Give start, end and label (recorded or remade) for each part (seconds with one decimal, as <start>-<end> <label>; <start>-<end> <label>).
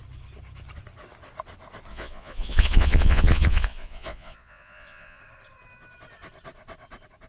0.0-1.9 recorded; 1.9-5.2 remade; 5.2-7.3 recorded